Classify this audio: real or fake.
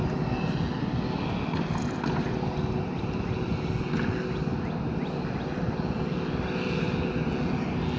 real